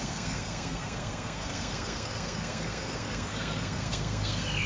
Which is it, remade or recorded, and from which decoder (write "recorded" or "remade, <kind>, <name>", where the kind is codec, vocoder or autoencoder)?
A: remade, codec, SNAC